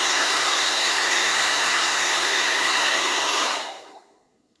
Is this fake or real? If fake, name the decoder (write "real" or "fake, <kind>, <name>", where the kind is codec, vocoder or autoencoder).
fake, codec, SNAC